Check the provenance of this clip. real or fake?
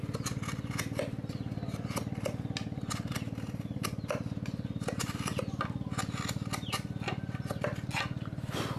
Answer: real